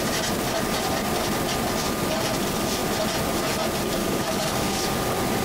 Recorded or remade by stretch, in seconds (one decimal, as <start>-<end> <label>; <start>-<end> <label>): 0.0-4.0 recorded; 4.0-4.8 remade; 4.8-5.4 recorded